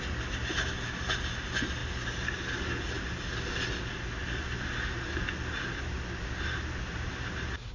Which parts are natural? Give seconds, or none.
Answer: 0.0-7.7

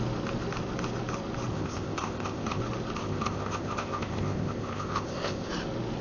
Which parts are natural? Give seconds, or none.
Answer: 0.0-1.5; 2.6-3.0; 5.5-6.0

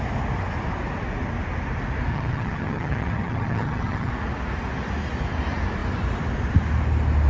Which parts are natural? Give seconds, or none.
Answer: 0.0-2.1; 4.1-7.3

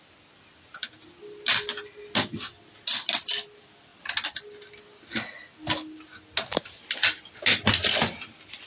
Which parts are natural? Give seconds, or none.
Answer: 0.0-8.7

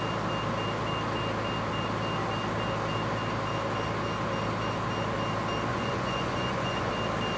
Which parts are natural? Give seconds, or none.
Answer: 0.0-5.7; 6.9-7.4

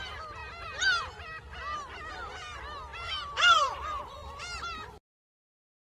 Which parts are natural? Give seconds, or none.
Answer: 0.4-2.1

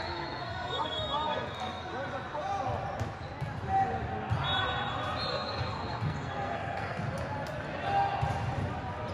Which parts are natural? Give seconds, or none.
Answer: 1.9-5.3; 7.0-9.1

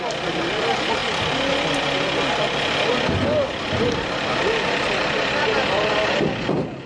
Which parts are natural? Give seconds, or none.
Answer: 0.0-1.0; 1.8-5.0; 6.2-6.9